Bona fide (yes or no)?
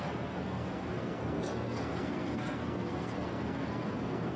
no